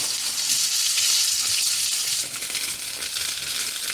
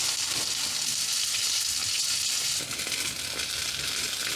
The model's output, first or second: first